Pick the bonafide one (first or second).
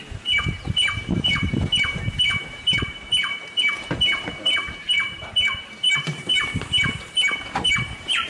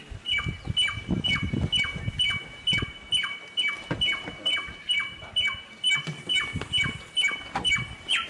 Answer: second